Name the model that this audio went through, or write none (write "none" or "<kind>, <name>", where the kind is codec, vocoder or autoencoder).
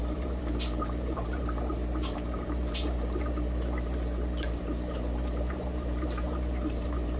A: vocoder, BigVGAN v2